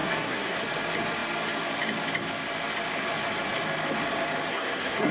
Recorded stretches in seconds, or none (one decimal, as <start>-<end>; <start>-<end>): 0.6-4.5